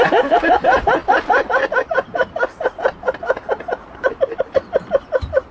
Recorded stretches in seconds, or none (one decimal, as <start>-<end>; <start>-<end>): 1.0-1.8

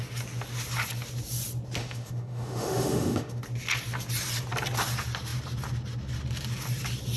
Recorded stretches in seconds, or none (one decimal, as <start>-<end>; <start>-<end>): 0.0-1.8; 3.4-7.2

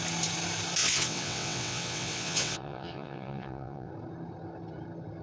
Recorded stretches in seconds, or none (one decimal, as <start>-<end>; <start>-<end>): 0.0-0.8; 3.9-5.2